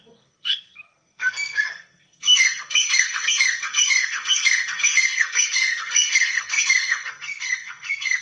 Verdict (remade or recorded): remade